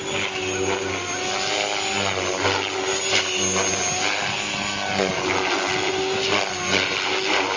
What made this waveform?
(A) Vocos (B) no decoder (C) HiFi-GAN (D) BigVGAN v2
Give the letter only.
B